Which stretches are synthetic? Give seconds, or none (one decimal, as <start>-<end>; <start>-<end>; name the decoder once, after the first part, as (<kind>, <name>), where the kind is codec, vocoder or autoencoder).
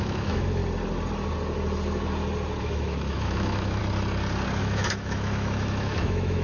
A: 0.0-0.6 (autoencoder, DAC-VAE); 2.6-3.8; 4.6-6.4